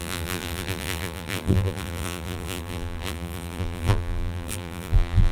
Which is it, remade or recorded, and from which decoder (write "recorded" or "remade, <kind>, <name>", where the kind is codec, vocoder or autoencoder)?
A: remade, vocoder, BigVGAN v2